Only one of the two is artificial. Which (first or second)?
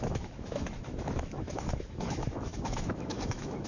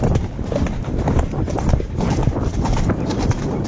first